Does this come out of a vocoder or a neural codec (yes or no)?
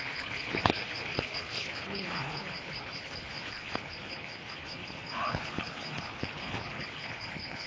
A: yes